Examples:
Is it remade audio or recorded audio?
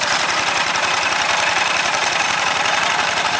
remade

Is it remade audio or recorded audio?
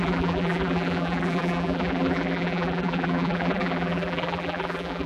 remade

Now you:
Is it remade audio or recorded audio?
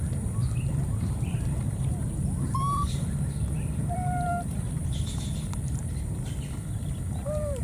remade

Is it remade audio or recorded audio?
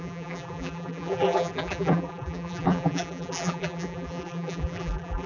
remade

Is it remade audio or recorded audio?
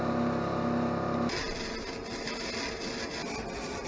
recorded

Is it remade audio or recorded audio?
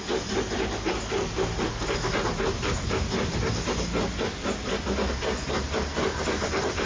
recorded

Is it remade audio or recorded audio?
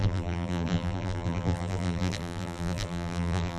remade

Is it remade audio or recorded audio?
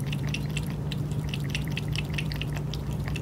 remade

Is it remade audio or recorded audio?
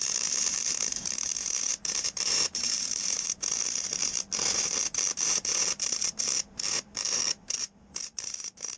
remade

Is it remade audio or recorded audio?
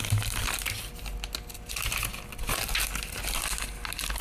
recorded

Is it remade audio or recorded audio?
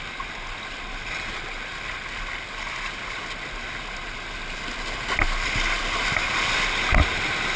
recorded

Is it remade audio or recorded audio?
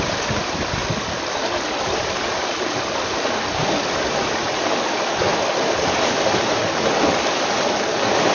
remade